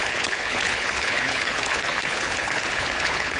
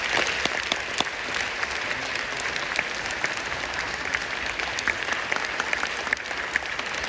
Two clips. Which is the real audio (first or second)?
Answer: second